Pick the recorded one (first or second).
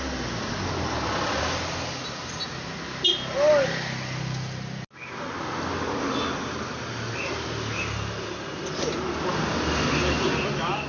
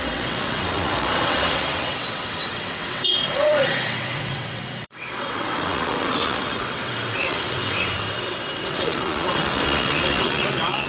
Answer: first